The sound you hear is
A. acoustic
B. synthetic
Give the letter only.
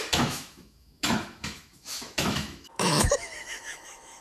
B